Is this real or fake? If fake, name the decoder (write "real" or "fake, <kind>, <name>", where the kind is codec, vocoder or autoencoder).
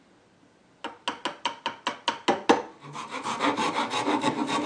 real